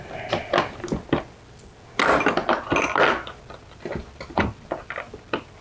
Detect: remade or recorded recorded